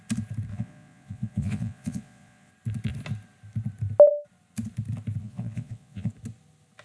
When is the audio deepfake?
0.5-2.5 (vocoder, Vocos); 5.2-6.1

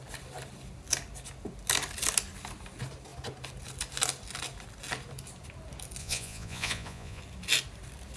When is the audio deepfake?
6.0-7.2 (vocoder, Vocos)

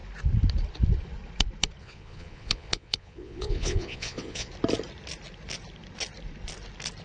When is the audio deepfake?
1.8-4.5 (vocoder, Vocos)

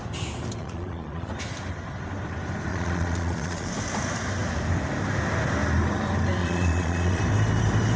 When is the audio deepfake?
0.6-1.3 (vocoder, Vocos); 2.7-3.7; 6.4-7.2

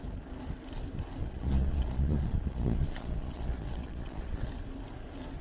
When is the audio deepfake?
1.2-4.4 (vocoder, Vocos)

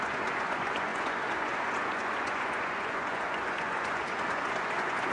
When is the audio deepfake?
0.0-5.1 (vocoder, Vocos)

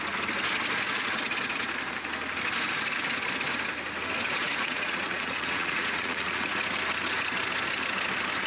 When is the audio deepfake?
4.4-6.5 (vocoder, Vocos)